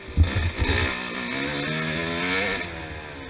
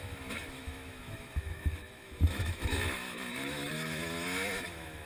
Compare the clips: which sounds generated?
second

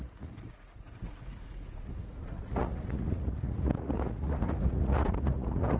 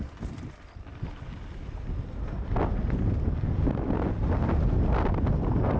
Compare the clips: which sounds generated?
first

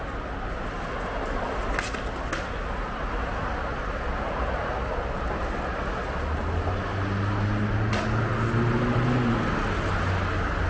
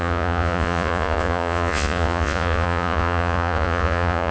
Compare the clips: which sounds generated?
second